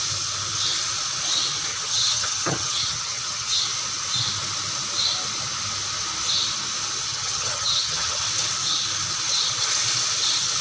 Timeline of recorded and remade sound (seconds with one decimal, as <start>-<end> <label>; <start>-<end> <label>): 0.0-1.7 recorded; 1.7-3.6 remade; 3.6-7.1 recorded; 7.1-8.2 remade; 8.2-10.6 recorded